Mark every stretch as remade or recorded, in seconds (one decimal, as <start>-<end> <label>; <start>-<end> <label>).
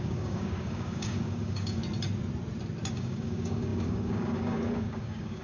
0.0-1.8 remade; 1.8-2.9 recorded; 2.9-5.4 remade